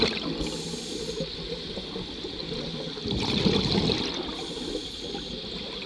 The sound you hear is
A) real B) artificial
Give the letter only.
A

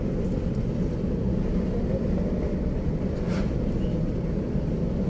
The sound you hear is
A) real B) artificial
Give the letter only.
A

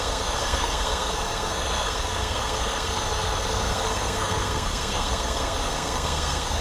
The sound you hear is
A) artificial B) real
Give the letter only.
A